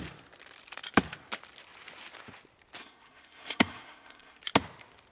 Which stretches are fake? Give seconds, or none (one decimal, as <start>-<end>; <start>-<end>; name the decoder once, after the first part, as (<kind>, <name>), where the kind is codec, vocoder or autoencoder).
2.8-4.4 (codec, SNAC)